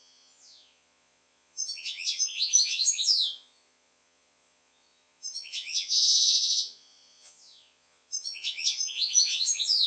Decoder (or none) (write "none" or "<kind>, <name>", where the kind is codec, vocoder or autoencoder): vocoder, Vocos